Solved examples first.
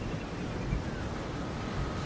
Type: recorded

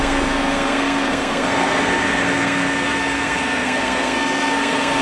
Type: remade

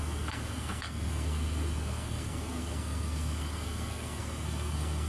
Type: remade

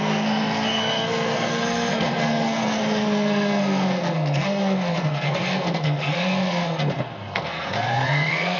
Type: remade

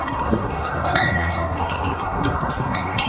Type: remade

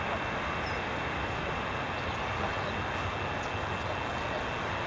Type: recorded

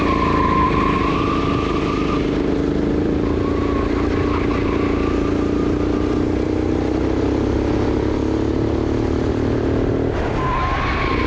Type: recorded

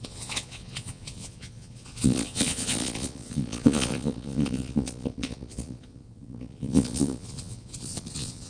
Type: remade